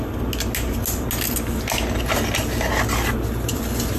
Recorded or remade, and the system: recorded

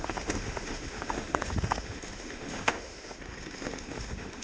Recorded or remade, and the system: remade, autoencoder, DAC-VAE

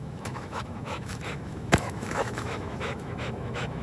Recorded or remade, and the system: remade, autoencoder, DAC-VAE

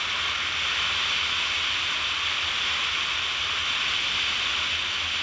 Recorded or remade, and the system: recorded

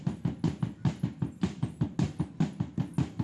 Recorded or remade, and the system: recorded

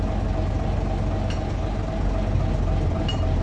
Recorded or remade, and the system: recorded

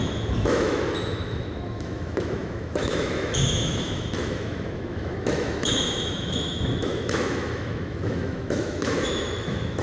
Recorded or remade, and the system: remade, autoencoder, DAC-VAE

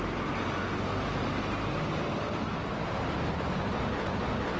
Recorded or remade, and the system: recorded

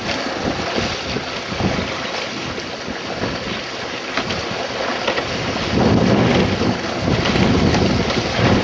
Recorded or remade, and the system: recorded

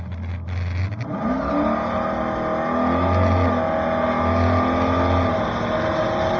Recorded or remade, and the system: recorded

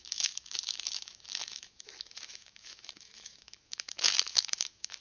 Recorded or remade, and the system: remade, autoencoder, DAC-VAE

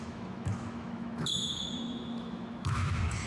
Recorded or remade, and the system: remade, autoencoder, DAC-VAE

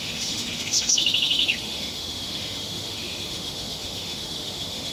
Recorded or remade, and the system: remade, autoencoder, DAC-VAE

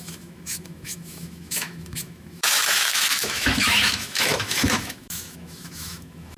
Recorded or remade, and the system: remade, autoencoder, DAC-VAE